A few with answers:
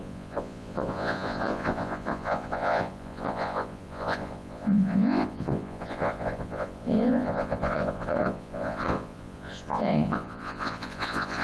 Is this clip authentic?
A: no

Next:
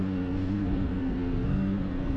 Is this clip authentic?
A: no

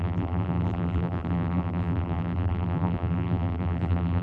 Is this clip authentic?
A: no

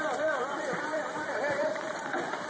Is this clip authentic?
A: no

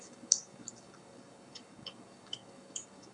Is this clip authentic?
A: no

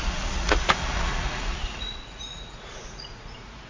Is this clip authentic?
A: no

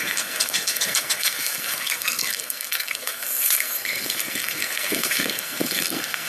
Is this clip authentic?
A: no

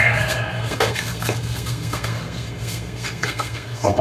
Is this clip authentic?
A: no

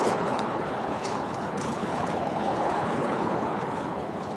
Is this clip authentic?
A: no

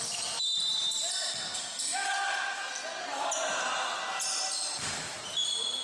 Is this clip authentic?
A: yes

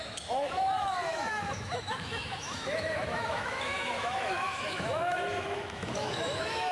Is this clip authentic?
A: no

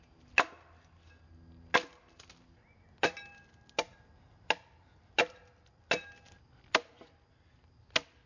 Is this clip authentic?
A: yes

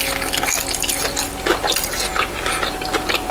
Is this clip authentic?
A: yes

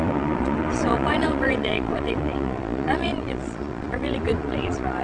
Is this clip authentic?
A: no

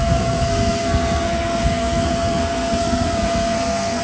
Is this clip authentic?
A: no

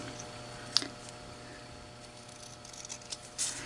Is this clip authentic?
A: yes